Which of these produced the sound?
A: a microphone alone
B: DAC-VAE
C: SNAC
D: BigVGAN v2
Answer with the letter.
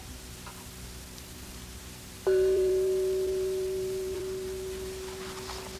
D